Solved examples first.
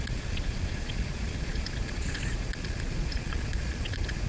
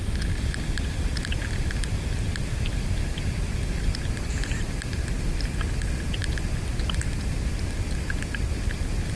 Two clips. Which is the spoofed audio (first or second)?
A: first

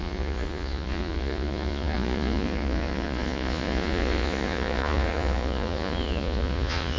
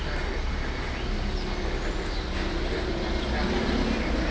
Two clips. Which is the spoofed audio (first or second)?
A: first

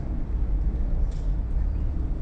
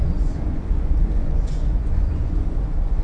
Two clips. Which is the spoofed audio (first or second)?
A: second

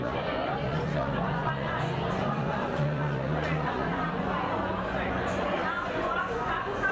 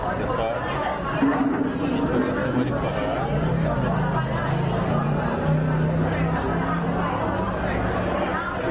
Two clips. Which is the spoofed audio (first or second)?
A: first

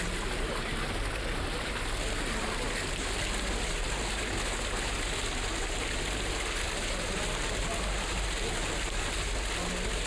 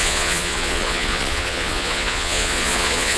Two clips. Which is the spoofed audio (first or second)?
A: second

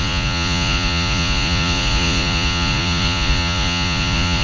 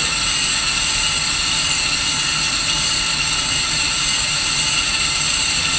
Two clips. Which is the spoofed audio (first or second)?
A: first